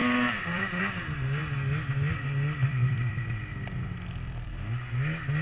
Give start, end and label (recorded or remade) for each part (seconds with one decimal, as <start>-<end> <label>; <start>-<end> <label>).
0.0-0.8 remade; 0.8-2.7 recorded; 2.7-4.5 remade; 4.5-5.4 recorded